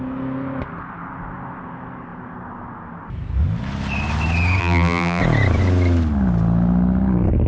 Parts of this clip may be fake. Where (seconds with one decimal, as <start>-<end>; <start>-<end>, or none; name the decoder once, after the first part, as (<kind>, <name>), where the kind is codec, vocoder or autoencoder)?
4.6-5.2 (vocoder, BigVGAN v2)